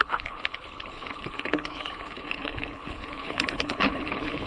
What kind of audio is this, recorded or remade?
remade